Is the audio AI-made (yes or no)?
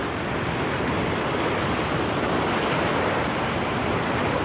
no